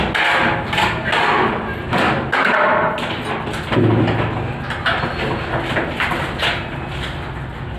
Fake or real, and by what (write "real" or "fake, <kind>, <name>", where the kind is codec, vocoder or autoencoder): real